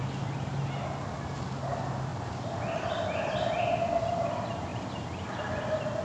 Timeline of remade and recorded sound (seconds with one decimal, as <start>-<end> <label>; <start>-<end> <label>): 0.0-6.0 recorded